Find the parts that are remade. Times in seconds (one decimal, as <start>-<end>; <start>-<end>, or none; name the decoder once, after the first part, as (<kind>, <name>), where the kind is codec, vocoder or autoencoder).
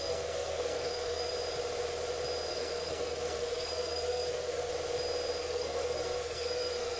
0.0-1.3 (codec, SNAC); 2.5-4.7; 5.4-7.0